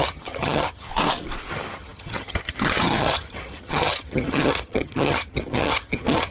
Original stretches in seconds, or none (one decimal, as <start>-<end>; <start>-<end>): 0.9-1.5